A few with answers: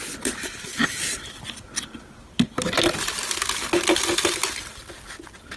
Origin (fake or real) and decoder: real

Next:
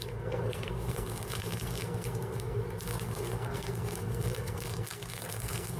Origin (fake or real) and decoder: fake, codec, SNAC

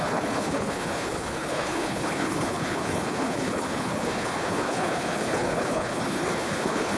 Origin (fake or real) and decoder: fake, codec, HILCodec